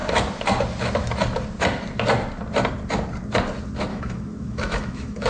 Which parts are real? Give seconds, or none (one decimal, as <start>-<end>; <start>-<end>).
0.0-3.9